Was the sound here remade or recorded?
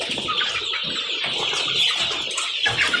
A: recorded